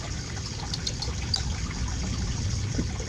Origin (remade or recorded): recorded